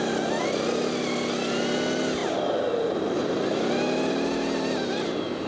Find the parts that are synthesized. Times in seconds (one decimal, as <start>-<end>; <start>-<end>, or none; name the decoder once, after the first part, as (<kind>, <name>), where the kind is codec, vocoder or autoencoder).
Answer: none